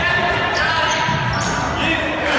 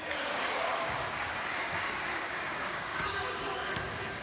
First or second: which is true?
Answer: first